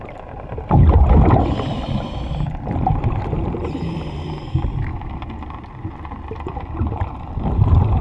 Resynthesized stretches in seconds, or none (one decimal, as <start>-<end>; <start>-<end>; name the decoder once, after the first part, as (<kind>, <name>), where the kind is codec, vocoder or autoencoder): 0.5-2.3 (vocoder, BigVGAN v2); 4.9-7.0